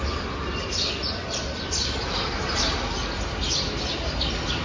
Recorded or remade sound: recorded